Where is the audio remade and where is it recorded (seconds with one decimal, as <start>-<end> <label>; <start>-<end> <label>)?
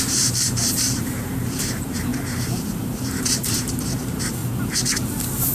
0.0-4.4 remade; 4.4-5.5 recorded